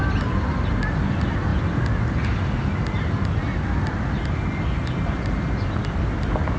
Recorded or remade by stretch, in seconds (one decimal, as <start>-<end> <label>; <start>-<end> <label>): 0.0-6.6 recorded